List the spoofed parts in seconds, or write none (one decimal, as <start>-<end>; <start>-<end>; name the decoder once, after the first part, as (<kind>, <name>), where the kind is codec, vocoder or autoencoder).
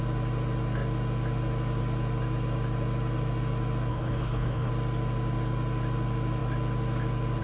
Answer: 3.9-4.7 (codec, HILCodec)